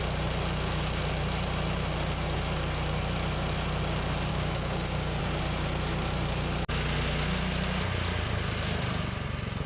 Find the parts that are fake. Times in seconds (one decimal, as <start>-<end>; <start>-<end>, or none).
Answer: 4.3-5.2